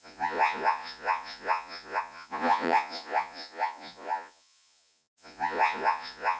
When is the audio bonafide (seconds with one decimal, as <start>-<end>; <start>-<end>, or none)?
none

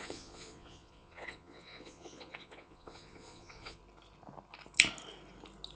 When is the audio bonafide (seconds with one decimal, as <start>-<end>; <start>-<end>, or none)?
3.8-5.8

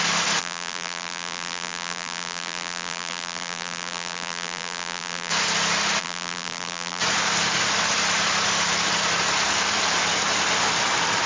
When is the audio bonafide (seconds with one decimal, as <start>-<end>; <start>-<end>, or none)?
0.0-0.4; 5.3-6.0; 7.0-11.3